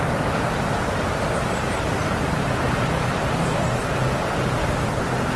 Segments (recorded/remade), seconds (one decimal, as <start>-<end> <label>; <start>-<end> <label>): 0.0-2.0 recorded; 2.0-5.0 remade; 5.0-5.4 recorded